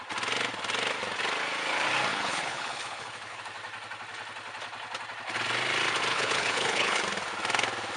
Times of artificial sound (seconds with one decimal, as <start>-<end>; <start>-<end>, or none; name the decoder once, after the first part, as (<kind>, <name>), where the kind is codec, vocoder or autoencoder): 2.1-3.4 (codec, HILCodec); 6.1-7.0